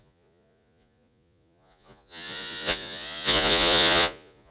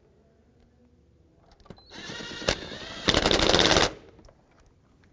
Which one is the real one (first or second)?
second